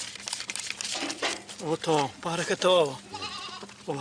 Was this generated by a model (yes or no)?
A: no